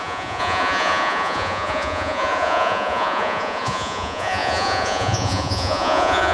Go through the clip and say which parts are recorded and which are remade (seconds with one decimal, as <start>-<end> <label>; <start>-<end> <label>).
0.0-6.3 remade